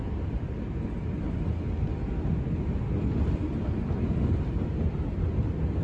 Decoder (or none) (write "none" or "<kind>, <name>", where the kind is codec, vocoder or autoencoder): none